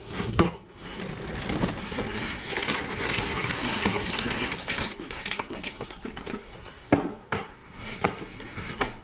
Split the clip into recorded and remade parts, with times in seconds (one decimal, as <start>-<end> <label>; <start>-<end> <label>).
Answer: 0.0-1.0 remade; 1.0-1.8 recorded; 1.8-9.0 remade